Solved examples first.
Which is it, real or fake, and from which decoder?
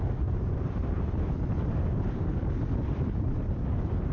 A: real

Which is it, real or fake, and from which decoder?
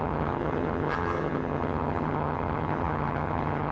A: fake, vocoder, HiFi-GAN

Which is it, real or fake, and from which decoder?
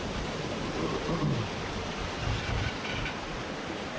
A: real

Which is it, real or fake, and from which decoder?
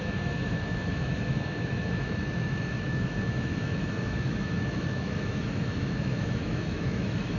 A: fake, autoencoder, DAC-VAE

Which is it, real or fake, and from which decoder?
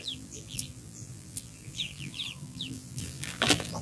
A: fake, vocoder, BigVGAN v2